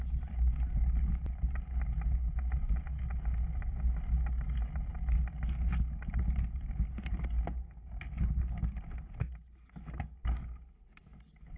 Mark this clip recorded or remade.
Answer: recorded